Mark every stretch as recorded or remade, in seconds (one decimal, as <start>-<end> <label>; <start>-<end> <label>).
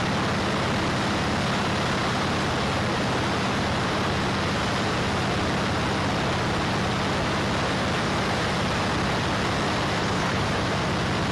0.0-10.0 recorded; 10.0-10.5 remade; 10.5-11.3 recorded